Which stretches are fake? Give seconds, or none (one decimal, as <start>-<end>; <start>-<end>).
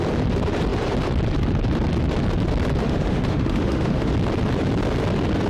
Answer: 2.8-4.1